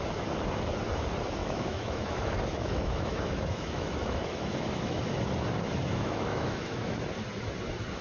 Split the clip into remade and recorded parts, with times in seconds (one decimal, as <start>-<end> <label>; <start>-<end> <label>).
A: 0.0-1.4 recorded; 1.4-5.0 remade; 5.0-5.9 recorded; 5.9-7.0 remade; 7.0-8.0 recorded